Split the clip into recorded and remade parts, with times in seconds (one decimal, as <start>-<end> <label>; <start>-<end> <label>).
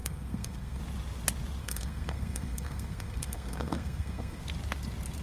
0.0-0.8 remade; 0.8-1.6 recorded; 1.6-4.4 remade; 4.4-5.2 recorded